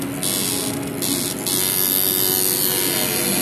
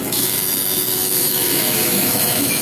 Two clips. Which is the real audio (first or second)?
first